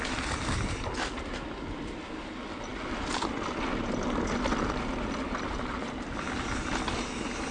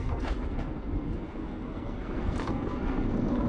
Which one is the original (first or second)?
first